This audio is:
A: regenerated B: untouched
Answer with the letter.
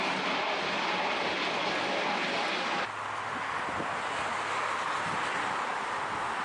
B